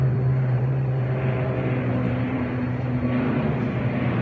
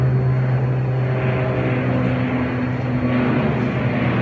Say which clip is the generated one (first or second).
first